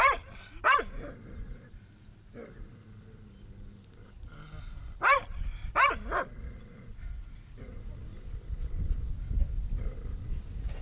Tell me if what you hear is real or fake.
real